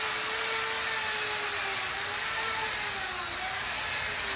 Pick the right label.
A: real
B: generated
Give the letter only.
A